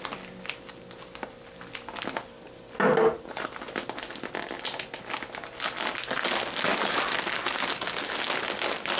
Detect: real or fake real